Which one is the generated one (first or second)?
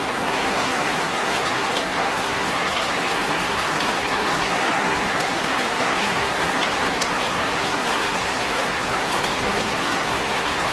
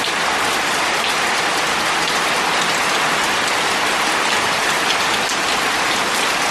first